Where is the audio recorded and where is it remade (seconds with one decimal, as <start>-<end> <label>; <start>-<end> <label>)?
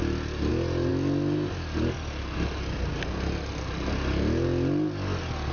0.0-5.5 recorded